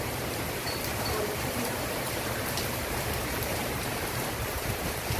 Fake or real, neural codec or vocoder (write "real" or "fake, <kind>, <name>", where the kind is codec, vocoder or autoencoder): fake, vocoder, BigVGAN v2